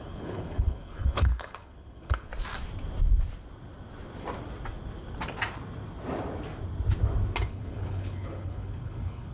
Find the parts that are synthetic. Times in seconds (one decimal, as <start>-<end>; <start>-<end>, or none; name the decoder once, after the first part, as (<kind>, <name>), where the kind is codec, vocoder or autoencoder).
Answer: 0.0-2.3 (codec, HILCodec); 7.5-9.3